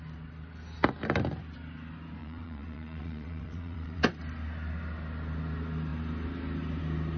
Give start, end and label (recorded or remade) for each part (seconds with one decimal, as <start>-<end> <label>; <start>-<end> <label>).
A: 0.0-2.2 recorded; 2.2-4.0 remade; 4.0-7.2 recorded